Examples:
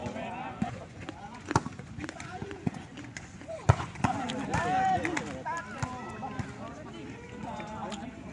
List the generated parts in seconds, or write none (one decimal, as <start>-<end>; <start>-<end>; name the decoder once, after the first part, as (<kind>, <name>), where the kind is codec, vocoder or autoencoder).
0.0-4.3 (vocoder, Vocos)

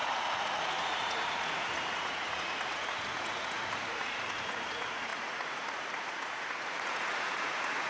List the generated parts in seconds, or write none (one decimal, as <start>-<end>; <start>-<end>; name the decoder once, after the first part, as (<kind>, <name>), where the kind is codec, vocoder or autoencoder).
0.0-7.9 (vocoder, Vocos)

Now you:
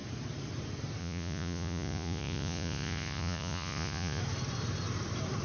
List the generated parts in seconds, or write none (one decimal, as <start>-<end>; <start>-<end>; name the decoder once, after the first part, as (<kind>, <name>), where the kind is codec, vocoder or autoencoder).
1.0-4.2 (vocoder, Vocos)